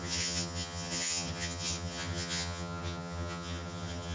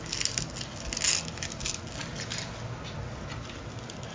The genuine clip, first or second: second